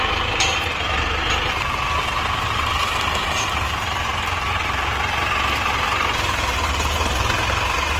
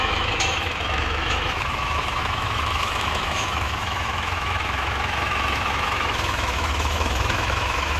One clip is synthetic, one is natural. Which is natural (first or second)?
first